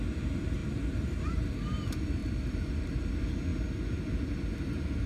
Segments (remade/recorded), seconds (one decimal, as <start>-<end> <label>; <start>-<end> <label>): 0.0-0.6 recorded; 0.6-1.4 remade; 1.4-2.2 recorded; 2.2-3.1 remade; 3.1-5.1 recorded